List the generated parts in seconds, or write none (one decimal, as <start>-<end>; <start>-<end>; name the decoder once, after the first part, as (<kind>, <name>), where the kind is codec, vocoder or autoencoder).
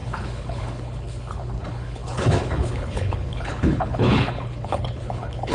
0.0-5.5 (codec, HILCodec)